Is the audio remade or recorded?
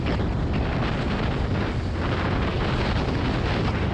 recorded